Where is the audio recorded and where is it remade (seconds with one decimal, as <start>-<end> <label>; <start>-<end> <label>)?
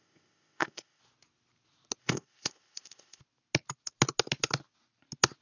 0.0-1.0 remade; 1.0-2.0 recorded; 2.0-3.2 remade; 3.2-5.4 recorded